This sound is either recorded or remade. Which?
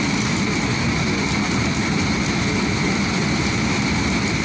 recorded